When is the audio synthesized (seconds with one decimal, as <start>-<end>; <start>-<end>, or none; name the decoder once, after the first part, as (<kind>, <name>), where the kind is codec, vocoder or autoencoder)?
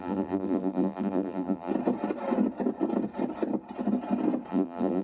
0.0-1.7 (vocoder, BigVGAN v2); 4.5-5.0